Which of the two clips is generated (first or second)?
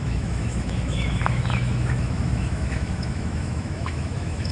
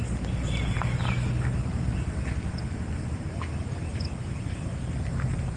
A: first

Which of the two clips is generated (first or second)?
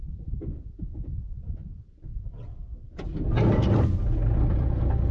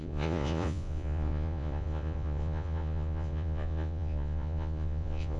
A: second